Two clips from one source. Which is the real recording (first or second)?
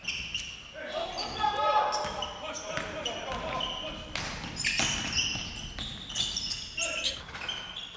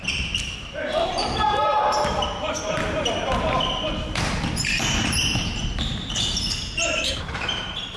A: first